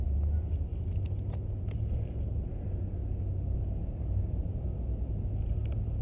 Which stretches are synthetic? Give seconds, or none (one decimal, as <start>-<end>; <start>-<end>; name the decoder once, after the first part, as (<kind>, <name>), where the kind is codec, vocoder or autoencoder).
none